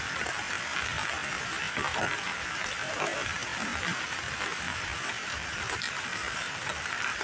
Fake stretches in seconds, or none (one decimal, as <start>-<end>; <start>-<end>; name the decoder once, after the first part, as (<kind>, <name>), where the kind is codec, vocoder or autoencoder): 4.7-7.2 (vocoder, BigVGAN v2)